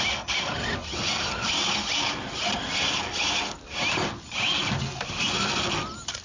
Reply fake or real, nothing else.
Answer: real